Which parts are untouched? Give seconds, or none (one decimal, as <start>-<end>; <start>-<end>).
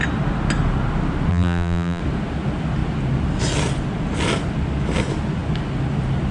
0.0-1.3; 2.0-6.3